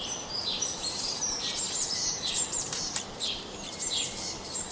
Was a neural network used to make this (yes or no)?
yes